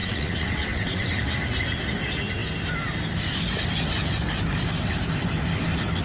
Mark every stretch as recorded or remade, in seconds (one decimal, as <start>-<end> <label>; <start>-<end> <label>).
0.0-1.1 remade; 1.1-6.0 recorded